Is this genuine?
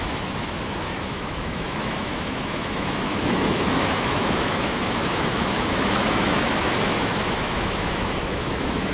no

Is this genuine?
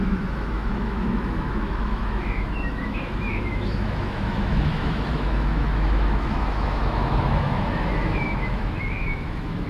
no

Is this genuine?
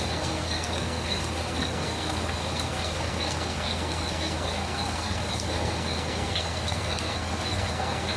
no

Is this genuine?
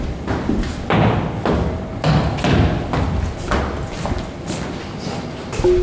yes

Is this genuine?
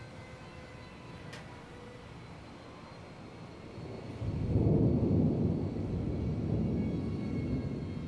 yes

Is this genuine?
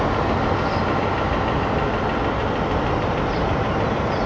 yes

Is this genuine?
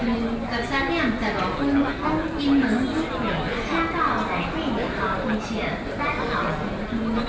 yes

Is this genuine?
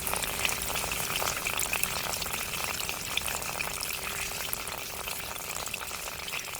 no